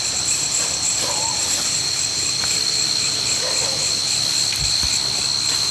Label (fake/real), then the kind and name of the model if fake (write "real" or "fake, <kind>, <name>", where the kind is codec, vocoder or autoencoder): real